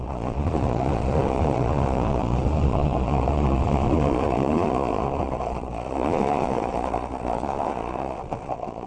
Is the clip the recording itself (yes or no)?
no